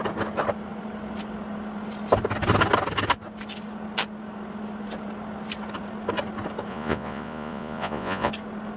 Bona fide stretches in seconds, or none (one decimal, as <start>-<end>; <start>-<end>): 0.0-6.7; 8.3-8.8